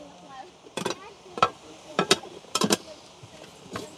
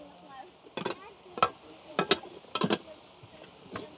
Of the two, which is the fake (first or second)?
first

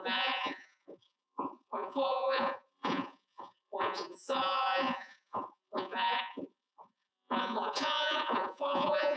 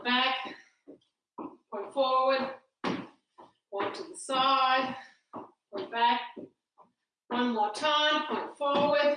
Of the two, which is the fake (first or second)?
first